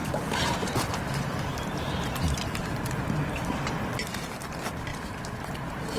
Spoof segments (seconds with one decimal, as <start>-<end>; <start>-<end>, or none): 0.0-3.5

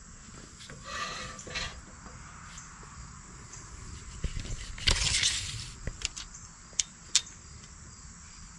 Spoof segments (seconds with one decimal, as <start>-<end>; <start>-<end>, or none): 0.0-1.7; 2.9-8.6

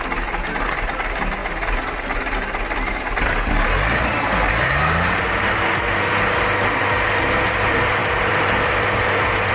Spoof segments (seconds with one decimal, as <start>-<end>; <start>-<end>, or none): 8.0-9.5